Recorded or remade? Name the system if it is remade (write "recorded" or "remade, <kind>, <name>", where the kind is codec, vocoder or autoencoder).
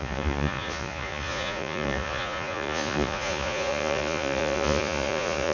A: remade, vocoder, Vocos